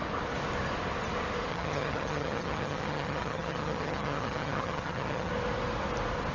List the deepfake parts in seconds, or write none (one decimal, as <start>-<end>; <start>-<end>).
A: 1.5-5.3